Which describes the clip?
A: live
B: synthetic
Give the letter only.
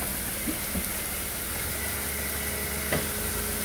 A